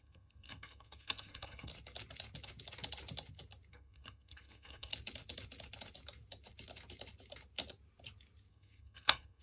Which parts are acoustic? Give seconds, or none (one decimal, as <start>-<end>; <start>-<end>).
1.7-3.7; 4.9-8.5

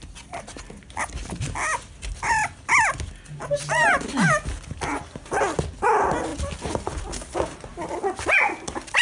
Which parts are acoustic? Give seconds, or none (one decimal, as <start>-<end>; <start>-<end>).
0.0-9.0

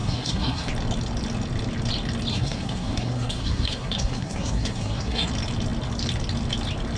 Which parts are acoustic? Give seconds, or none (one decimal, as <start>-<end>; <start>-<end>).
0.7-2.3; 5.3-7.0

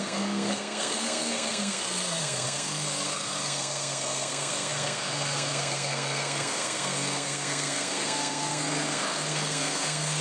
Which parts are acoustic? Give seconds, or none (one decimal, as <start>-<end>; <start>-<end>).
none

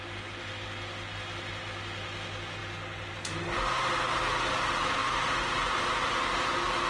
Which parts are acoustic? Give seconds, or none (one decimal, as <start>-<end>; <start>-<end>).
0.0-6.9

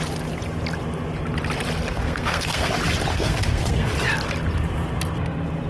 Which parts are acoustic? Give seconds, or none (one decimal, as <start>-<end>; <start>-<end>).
0.0-1.9; 2.7-3.1; 3.9-5.7

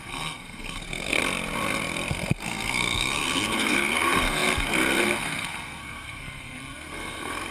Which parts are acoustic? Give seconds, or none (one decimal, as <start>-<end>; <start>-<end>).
1.2-2.1

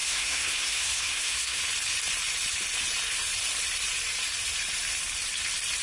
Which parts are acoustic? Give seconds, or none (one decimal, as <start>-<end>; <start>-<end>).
1.6-5.8